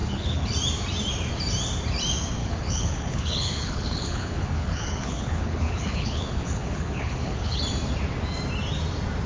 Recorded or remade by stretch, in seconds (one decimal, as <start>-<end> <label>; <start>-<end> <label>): 0.0-0.5 remade; 0.5-2.4 recorded; 2.4-7.6 remade; 7.6-9.3 recorded

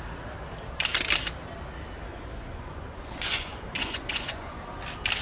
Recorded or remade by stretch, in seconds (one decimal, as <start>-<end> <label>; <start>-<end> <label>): 0.0-2.1 recorded; 2.1-4.6 remade; 4.6-5.2 recorded

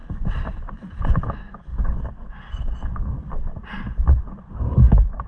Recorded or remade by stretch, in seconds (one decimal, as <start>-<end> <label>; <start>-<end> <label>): 0.0-1.0 remade; 1.0-1.7 recorded; 1.7-5.3 remade

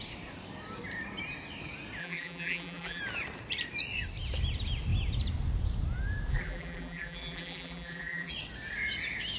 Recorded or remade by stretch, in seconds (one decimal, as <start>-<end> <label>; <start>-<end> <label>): 0.0-2.0 recorded; 2.0-3.0 remade; 3.0-6.3 recorded; 6.3-8.3 remade; 8.3-9.4 recorded